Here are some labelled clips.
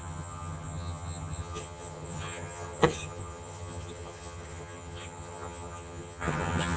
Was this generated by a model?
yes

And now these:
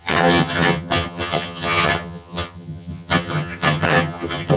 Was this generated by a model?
yes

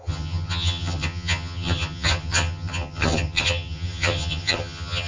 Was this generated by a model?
yes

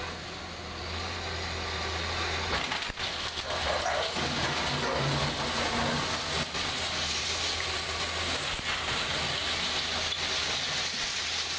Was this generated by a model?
no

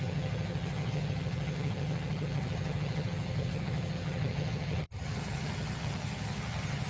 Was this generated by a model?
yes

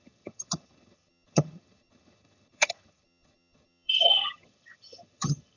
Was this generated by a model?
yes